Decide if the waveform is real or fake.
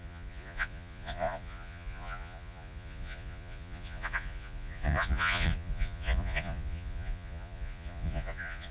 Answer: fake